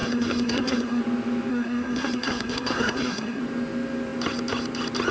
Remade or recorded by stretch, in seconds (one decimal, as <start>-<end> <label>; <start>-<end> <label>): 0.0-1.0 remade; 1.0-1.5 recorded; 1.5-3.4 remade; 3.4-5.1 recorded